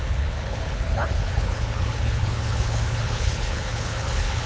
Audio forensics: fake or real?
fake